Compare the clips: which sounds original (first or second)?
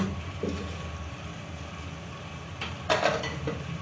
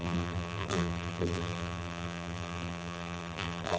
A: first